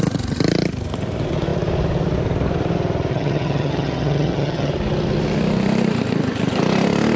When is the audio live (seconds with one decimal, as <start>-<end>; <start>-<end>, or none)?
0.0-3.1; 4.7-7.2